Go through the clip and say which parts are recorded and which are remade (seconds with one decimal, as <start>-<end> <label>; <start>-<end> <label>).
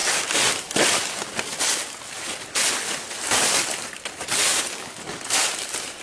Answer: 0.0-4.5 recorded; 4.5-5.0 remade; 5.0-6.0 recorded